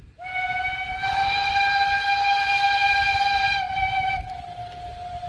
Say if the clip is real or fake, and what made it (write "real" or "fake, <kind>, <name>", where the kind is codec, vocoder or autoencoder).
real